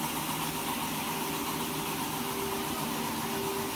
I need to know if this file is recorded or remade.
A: recorded